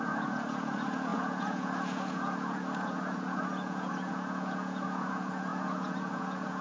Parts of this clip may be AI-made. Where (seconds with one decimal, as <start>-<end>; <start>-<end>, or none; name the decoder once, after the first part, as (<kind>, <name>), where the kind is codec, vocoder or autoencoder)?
0.0-6.6 (vocoder, Vocos)